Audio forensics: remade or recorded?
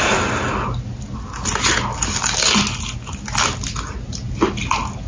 recorded